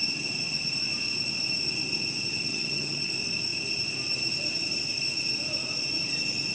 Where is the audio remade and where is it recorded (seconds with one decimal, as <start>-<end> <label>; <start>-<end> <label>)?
0.0-2.5 recorded; 2.5-3.1 remade; 3.1-6.5 recorded

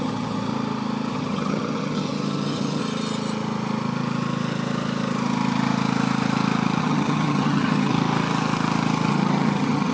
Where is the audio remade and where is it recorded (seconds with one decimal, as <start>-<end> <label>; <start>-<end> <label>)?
0.0-0.5 remade; 0.5-1.1 recorded; 1.1-2.8 remade; 2.8-6.8 recorded; 6.8-7.9 remade; 7.9-9.1 recorded; 9.1-9.9 remade

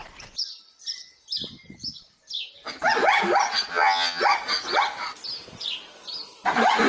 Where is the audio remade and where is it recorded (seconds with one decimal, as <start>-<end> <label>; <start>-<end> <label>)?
0.0-3.7 recorded; 3.7-4.2 remade; 4.2-6.9 recorded